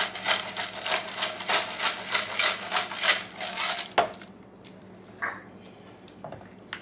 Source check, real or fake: real